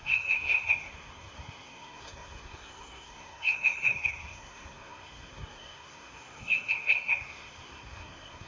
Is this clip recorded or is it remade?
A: remade